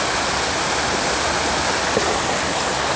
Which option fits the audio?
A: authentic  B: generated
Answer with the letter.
A